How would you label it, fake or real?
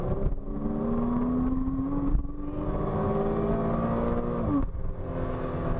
real